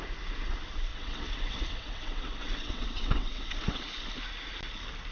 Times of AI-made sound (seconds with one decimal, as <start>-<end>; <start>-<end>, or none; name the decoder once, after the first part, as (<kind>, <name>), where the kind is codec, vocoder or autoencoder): 0.9-3.8 (vocoder, WaveNeXt)